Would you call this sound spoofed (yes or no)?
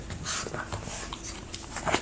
no